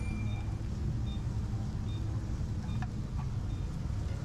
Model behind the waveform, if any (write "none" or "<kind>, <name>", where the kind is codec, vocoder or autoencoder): none